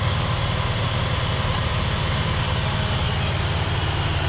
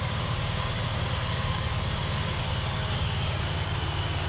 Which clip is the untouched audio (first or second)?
first